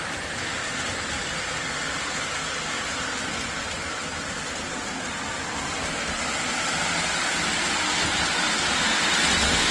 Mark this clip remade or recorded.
recorded